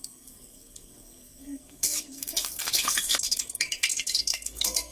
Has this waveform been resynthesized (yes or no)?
yes